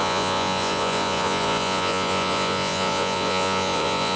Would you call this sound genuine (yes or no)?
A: no